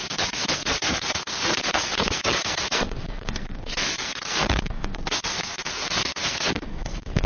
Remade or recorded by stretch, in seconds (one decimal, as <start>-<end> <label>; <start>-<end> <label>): 0.0-7.3 remade